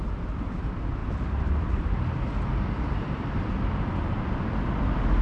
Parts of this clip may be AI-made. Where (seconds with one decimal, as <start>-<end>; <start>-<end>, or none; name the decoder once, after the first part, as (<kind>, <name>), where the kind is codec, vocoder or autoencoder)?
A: 1.0-3.8 (vocoder, BigVGAN v2)